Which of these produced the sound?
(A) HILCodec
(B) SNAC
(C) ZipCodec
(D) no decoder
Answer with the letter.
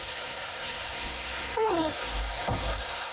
B